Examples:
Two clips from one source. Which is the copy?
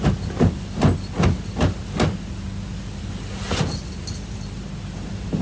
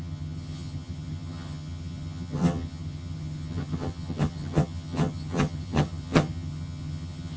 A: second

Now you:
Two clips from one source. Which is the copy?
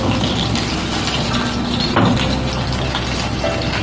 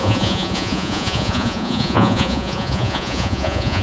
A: second